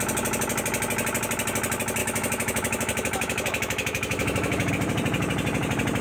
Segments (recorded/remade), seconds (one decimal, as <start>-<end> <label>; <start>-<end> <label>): 0.0-2.0 recorded; 2.0-4.7 remade; 4.7-6.0 recorded